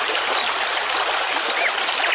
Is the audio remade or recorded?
remade